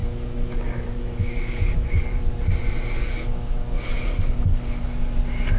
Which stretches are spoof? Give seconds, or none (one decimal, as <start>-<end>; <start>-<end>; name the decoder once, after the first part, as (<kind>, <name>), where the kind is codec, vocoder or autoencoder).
0.0-2.2 (codec, DAC); 3.0-4.9